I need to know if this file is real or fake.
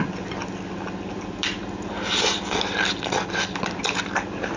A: real